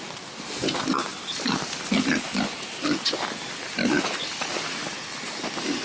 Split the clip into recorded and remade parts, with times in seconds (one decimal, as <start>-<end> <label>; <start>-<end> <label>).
0.0-5.8 recorded